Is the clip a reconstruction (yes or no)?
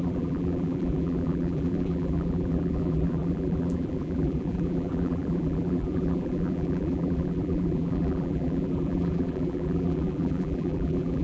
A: yes